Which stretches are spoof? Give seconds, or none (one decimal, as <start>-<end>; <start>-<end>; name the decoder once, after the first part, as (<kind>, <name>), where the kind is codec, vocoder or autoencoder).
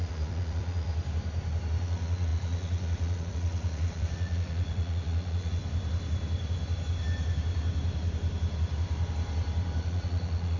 0.0-0.9 (vocoder, Vocos); 1.8-5.6; 9.8-10.6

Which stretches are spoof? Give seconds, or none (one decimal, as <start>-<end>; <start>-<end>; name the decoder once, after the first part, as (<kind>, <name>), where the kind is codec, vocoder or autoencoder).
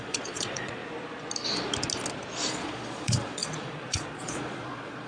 0.0-0.8 (vocoder, Vocos); 2.5-5.1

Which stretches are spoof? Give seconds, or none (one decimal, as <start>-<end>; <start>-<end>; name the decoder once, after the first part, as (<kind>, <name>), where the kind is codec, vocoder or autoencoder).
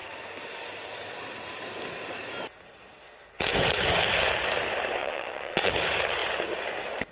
5.0-5.7 (vocoder, Vocos)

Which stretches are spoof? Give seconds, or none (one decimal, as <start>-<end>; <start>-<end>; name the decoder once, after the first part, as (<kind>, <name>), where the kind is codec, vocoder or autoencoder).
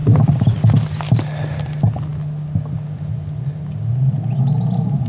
none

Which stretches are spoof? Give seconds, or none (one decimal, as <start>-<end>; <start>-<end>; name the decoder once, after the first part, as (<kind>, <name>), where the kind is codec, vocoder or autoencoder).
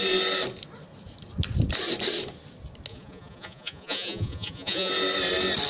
2.9-4.9 (vocoder, Vocos)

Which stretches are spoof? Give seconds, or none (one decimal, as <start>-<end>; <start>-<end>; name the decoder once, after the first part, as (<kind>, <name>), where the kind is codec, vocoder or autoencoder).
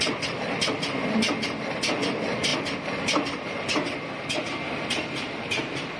none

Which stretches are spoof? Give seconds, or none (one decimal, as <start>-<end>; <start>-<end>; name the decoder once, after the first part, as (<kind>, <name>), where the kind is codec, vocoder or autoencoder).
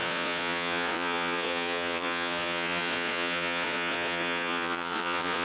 0.0-5.4 (vocoder, Vocos)